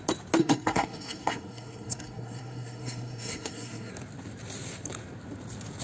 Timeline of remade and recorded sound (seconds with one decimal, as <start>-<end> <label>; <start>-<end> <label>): 0.0-0.4 recorded; 0.4-3.9 remade; 3.9-5.8 recorded